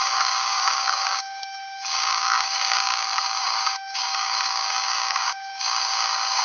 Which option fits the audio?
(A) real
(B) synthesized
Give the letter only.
B